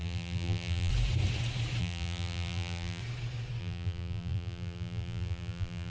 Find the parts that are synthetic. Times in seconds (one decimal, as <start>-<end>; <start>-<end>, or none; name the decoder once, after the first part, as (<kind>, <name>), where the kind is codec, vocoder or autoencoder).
0.0-0.9 (vocoder, BigVGAN v2); 1.8-3.0; 3.6-5.9